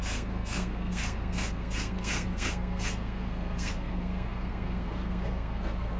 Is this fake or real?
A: fake